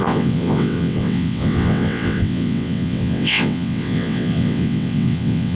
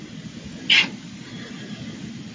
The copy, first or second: first